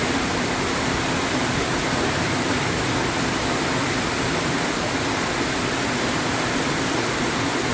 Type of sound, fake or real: real